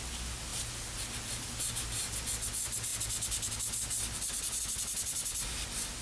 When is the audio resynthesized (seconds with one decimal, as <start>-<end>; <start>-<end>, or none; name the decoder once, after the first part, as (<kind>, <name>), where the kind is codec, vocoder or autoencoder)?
none